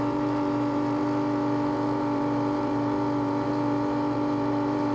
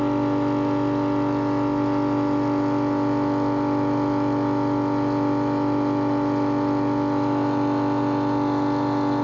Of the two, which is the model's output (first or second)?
first